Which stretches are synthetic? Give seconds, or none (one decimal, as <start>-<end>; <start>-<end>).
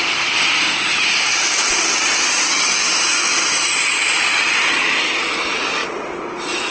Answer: 4.0-5.1